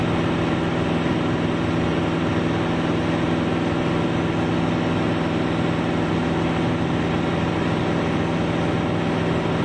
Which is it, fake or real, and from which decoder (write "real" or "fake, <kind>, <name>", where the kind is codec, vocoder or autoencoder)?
real